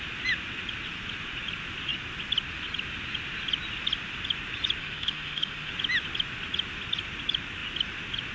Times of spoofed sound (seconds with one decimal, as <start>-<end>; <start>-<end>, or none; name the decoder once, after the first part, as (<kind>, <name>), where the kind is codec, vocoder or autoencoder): 4.8-5.7 (autoencoder, DAC-VAE)